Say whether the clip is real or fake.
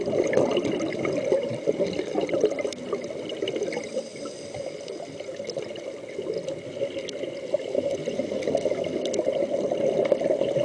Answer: real